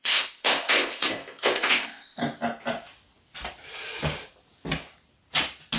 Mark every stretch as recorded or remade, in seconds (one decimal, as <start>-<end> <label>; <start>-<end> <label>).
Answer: 0.0-2.2 remade; 2.2-5.8 recorded

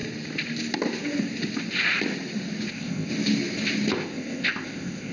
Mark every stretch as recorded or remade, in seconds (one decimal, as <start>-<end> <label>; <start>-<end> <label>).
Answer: 0.0-2.7 recorded; 2.7-3.1 remade; 3.1-3.9 recorded; 3.9-5.1 remade

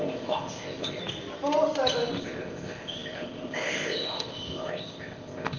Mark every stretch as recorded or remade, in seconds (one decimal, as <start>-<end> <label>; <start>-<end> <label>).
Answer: 0.0-1.0 remade; 1.0-2.2 recorded; 2.2-5.6 remade

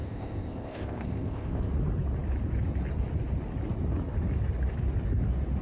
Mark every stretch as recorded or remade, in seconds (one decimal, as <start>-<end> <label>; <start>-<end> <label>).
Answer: 0.0-1.7 remade; 1.7-5.6 recorded

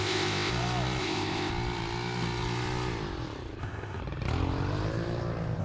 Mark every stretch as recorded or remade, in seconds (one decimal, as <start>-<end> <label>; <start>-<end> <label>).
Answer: 0.0-0.5 remade; 0.5-1.0 recorded; 1.0-1.5 remade; 1.5-3.6 recorded; 3.6-4.0 remade; 4.0-5.6 recorded

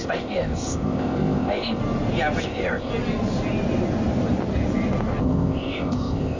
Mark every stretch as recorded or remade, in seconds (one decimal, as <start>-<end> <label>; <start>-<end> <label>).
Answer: 0.0-1.8 remade; 1.8-2.4 recorded; 2.4-2.9 remade; 2.9-5.2 recorded; 5.2-6.4 remade